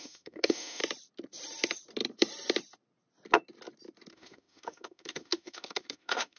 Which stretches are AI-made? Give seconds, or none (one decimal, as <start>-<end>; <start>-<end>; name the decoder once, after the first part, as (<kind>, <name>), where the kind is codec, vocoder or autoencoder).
0.0-0.8 (autoencoder, DAC-VAE); 4.1-6.4